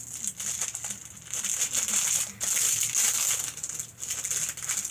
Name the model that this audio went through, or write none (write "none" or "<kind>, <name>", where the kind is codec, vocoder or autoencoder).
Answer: none